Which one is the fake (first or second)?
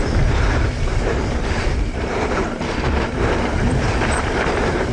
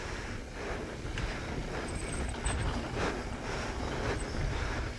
first